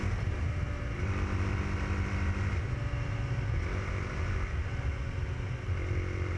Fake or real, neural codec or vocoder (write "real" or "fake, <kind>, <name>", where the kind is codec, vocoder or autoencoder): real